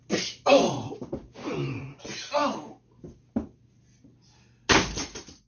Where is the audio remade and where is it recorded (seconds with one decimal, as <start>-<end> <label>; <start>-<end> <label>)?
0.0-5.5 recorded